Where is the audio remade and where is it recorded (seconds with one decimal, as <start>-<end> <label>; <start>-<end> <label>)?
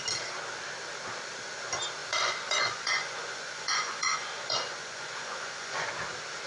0.0-2.0 recorded; 2.0-5.9 remade; 5.9-6.5 recorded